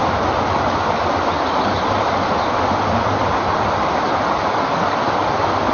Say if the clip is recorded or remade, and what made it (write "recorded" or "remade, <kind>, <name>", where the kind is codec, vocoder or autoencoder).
recorded